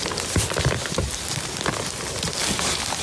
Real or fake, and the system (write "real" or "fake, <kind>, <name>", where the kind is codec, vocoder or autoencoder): real